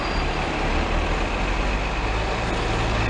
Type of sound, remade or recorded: recorded